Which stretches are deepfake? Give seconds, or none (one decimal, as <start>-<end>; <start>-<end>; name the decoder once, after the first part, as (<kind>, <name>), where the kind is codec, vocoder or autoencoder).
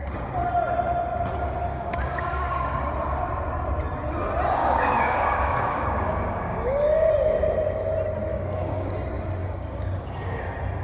1.7-2.9 (codec, DAC); 4.6-7.1; 8.3-8.9; 9.4-10.4